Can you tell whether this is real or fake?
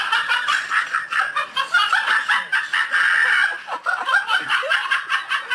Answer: real